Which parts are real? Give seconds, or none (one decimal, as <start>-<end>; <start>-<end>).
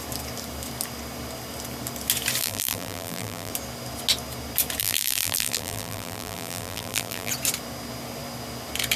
0.0-2.4; 3.5-4.8; 7.3-9.0